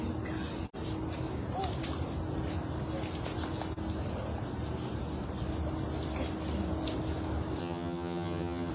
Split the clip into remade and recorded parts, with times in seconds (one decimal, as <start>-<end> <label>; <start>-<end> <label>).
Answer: 0.0-7.6 recorded; 7.6-8.7 remade